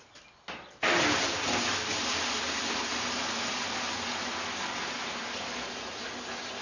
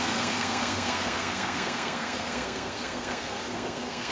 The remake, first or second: second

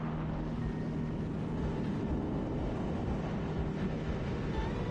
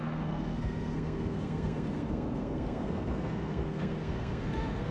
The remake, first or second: second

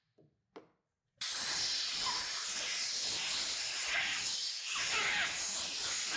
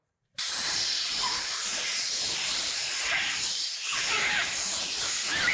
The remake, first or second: second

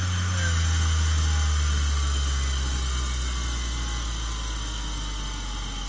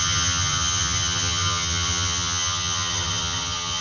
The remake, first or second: second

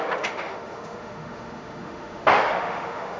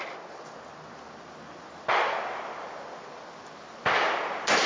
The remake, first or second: first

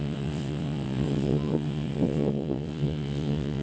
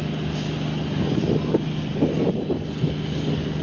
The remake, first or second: first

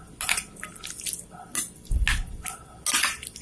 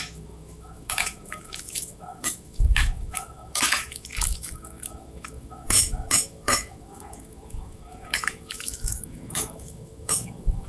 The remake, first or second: second